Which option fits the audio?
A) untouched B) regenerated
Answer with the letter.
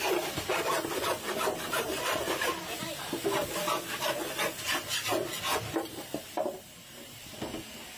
B